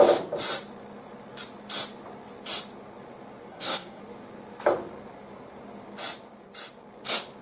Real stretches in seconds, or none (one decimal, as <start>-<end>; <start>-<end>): 0.0-3.5; 4.0-7.4